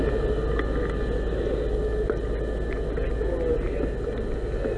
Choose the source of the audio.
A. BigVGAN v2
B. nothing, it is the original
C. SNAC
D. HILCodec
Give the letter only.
B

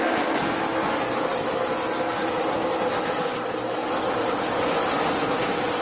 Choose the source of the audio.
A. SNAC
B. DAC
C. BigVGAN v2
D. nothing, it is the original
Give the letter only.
D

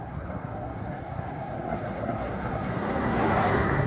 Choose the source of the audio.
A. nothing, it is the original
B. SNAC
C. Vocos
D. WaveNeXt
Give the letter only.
B